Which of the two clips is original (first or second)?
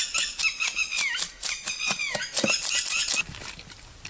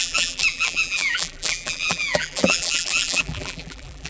first